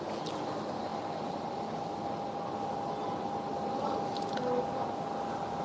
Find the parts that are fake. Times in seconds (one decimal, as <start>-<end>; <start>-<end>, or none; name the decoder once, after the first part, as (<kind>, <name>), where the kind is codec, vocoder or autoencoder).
none